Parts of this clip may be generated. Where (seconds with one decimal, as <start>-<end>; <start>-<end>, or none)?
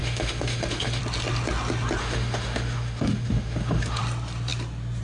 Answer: 0.0-1.0; 2.0-4.0